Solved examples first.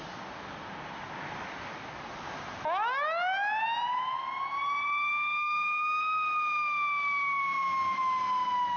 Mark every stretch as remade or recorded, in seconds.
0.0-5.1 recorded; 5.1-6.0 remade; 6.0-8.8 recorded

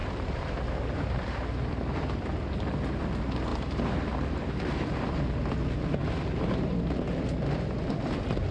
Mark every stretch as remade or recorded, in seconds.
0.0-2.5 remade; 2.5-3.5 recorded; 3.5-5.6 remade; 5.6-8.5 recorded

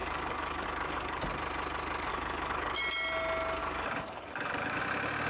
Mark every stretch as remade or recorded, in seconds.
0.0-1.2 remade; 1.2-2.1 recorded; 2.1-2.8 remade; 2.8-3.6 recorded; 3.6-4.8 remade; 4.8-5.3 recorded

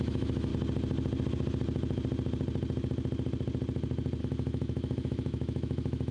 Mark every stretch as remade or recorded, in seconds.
0.0-0.5 remade; 0.5-4.2 recorded; 4.2-6.1 remade

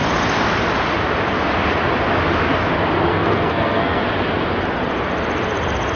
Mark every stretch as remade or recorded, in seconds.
0.0-3.1 recorded; 3.1-4.0 remade; 4.0-6.0 recorded

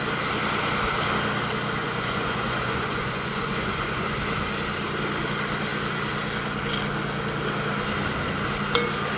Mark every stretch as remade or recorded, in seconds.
0.0-1.8 recorded; 1.8-4.2 remade; 4.2-9.2 recorded

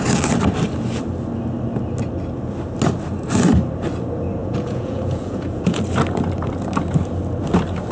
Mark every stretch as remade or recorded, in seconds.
0.0-4.4 recorded; 4.4-5.8 remade; 5.8-7.9 recorded

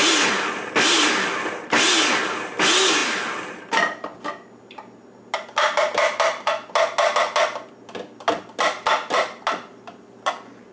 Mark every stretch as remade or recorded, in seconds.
0.0-10.7 recorded